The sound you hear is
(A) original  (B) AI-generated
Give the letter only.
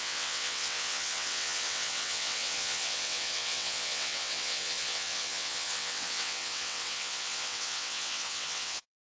B